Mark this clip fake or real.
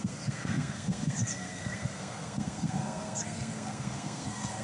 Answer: fake